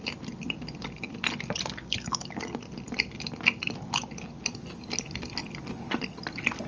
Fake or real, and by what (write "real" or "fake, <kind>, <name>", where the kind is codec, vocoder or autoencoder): real